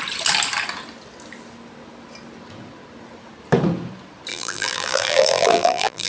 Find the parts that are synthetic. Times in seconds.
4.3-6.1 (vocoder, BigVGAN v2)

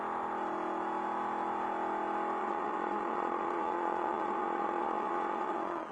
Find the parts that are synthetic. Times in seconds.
2.4-5.9 (vocoder, Vocos)

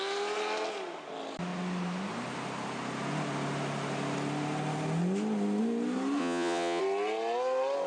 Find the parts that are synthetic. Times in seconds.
6.2-6.8 (vocoder, WaveNeXt)

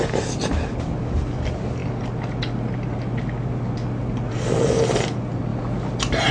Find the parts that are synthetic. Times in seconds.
none

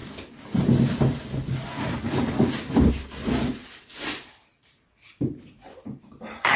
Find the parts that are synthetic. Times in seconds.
3.6-6.6 (vocoder, BigVGAN v2)